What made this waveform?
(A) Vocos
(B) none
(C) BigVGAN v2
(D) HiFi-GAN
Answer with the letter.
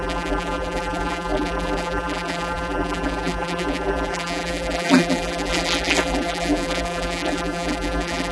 C